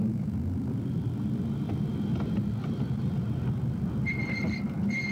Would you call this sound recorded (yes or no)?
yes